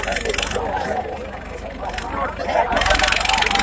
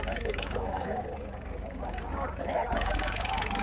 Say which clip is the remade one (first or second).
second